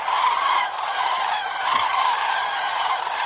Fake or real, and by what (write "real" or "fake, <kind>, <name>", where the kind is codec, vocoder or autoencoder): fake, vocoder, BigVGAN v2